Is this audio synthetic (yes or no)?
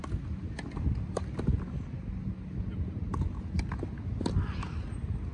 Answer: no